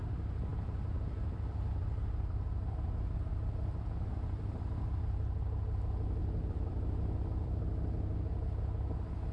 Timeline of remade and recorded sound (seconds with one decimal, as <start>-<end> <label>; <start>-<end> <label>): 0.0-0.5 recorded; 0.5-5.8 remade; 5.8-6.2 recorded; 6.2-7.6 remade; 7.6-9.3 recorded